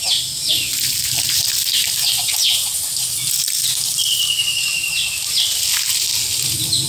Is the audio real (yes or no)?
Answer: yes